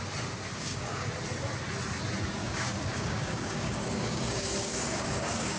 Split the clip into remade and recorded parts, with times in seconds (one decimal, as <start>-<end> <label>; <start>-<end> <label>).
0.0-0.5 recorded; 0.5-1.1 remade; 1.1-2.4 recorded; 2.4-5.6 remade

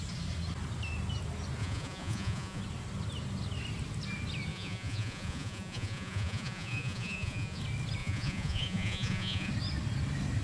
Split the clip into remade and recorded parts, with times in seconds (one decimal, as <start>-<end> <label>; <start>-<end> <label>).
0.0-1.6 recorded; 1.6-2.6 remade; 2.6-4.5 recorded; 4.5-7.6 remade; 7.6-8.0 recorded; 8.0-9.5 remade; 9.5-10.4 recorded

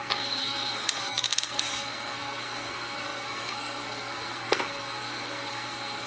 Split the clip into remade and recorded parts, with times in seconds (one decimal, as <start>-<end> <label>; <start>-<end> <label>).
0.0-6.1 remade

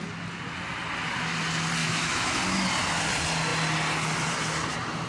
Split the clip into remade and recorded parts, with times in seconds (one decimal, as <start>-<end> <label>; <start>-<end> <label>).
0.0-1.8 recorded; 1.8-2.4 remade; 2.4-5.1 recorded

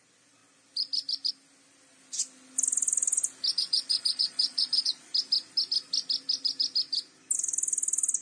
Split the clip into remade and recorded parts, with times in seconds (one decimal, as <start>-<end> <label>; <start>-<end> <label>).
0.0-3.5 recorded; 3.5-5.0 remade; 5.0-8.2 recorded